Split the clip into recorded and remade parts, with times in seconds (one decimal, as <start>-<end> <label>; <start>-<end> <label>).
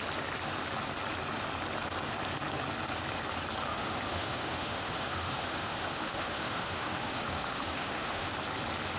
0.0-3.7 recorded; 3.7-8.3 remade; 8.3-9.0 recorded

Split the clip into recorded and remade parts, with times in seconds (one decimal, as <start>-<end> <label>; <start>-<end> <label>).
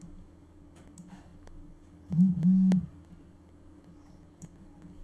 0.0-5.0 remade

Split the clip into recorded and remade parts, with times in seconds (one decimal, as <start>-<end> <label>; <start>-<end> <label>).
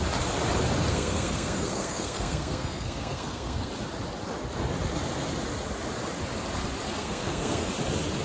0.0-0.9 recorded; 0.9-3.7 remade; 3.7-7.0 recorded; 7.0-7.7 remade; 7.7-8.2 recorded